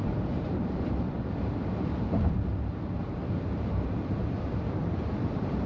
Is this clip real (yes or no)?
no